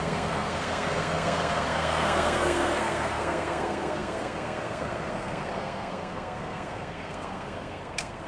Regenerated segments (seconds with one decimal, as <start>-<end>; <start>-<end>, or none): 0.0-8.3